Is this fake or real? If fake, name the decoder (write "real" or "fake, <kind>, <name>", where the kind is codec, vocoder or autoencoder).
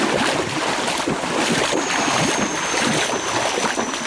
real